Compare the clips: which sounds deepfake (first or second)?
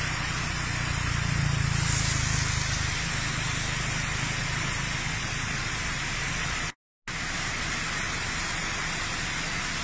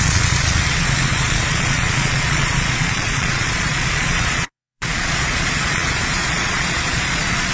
second